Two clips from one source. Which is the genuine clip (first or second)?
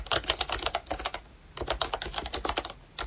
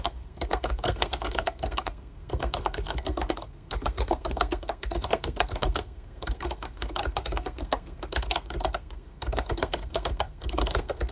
first